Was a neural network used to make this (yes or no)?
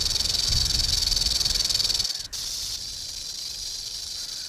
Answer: no